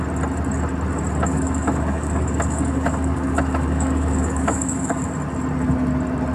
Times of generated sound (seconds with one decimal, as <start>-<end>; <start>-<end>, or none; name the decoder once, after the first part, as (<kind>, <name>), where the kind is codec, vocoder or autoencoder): 1.3-5.1 (codec, DAC)